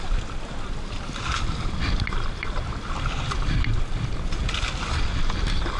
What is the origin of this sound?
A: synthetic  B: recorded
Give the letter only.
B